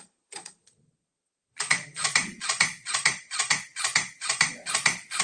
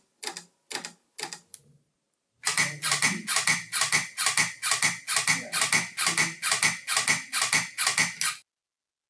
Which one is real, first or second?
second